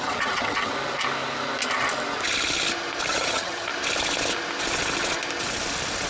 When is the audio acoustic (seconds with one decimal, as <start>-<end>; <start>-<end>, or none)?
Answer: 0.7-3.1; 3.7-6.1